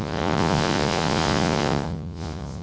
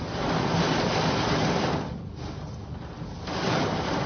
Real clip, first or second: second